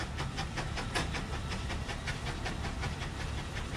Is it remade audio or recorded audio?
recorded